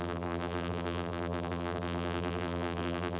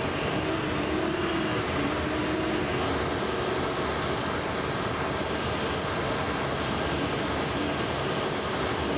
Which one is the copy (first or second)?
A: first